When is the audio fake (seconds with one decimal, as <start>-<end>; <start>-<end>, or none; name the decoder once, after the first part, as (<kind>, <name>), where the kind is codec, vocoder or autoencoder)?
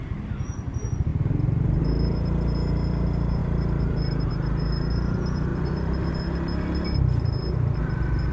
3.4-4.3 (vocoder, BigVGAN v2); 5.5-6.1